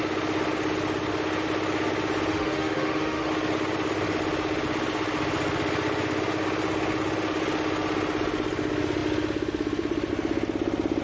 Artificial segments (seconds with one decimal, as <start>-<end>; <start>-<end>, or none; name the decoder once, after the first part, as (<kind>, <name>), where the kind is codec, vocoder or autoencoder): 2.3-3.3 (autoencoder, DAC-VAE)